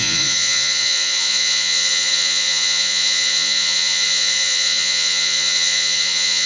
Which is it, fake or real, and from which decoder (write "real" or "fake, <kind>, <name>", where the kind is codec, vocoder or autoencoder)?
fake, vocoder, Vocos